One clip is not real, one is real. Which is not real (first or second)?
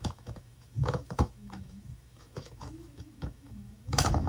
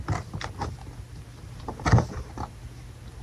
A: first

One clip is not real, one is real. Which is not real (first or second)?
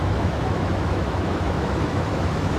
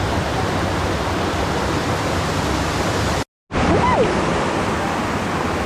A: first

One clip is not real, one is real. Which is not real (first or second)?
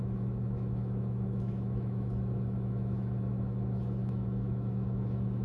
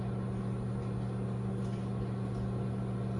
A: first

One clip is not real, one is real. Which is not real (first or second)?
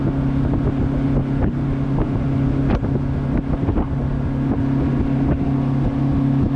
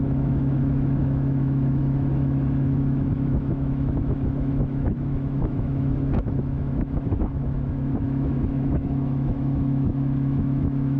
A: second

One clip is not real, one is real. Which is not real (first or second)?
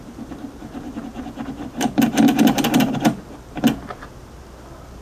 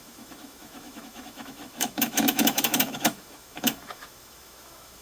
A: second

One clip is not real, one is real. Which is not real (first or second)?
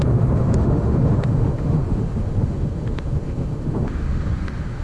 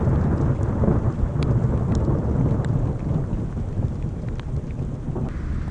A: first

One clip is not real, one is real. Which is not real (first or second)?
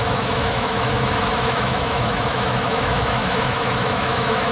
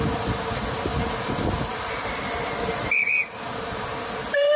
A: first